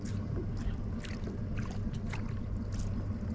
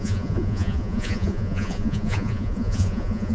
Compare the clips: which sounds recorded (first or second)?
first